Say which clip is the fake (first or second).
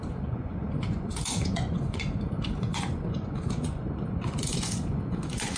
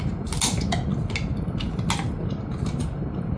first